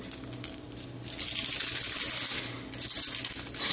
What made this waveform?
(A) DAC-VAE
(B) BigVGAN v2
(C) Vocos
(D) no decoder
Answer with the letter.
D